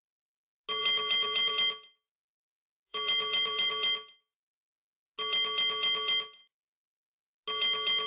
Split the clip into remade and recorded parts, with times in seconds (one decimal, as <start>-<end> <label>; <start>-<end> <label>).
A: 0.0-0.8 recorded; 0.8-1.5 remade; 1.5-2.9 recorded; 2.9-3.7 remade; 3.7-8.1 recorded